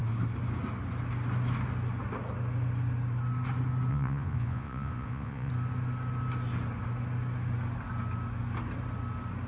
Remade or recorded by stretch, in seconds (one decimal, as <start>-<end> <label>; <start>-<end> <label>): 0.0-3.9 recorded; 3.9-5.5 remade; 5.5-9.5 recorded